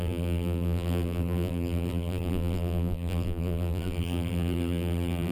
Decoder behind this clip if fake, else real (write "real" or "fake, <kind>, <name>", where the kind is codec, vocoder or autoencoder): fake, vocoder, BigVGAN v2